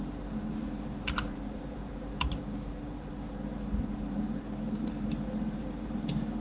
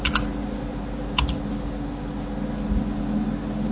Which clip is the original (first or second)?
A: second